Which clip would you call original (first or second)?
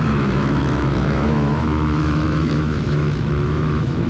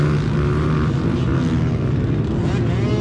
second